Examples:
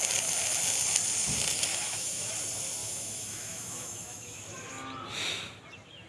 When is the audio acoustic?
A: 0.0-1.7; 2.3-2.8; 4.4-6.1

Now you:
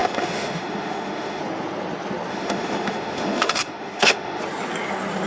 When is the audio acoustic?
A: 1.4-2.3; 4.4-5.3

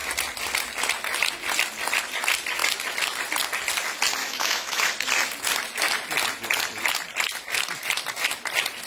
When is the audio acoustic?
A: 0.0-4.2; 4.9-8.9

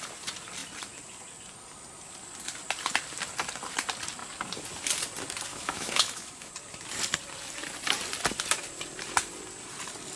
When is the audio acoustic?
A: 0.0-5.5; 6.5-10.2

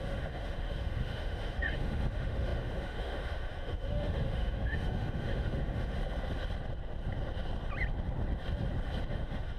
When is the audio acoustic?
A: 6.0-9.1

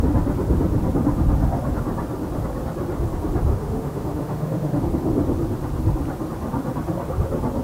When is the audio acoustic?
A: 0.0-3.5; 4.8-7.6